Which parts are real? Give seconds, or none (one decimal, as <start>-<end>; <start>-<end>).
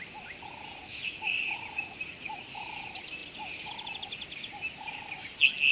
0.0-0.9; 2.5-3.2; 3.7-5.7